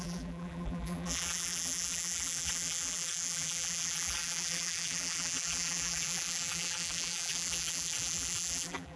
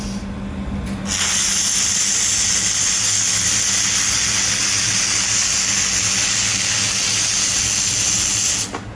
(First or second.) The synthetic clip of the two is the first